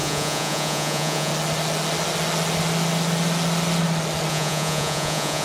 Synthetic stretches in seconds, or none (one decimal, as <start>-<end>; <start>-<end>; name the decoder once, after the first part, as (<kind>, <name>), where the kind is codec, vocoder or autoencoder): 0.0-1.3 (vocoder, Vocos); 4.3-5.4